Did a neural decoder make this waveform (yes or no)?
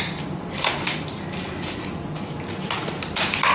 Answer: no